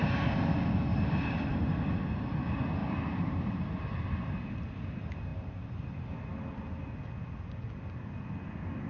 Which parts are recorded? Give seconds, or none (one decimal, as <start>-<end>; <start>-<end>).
0.0-0.9; 1.7-2.8; 3.5-8.9